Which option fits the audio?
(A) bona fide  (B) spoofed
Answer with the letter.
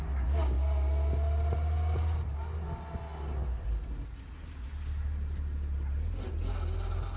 A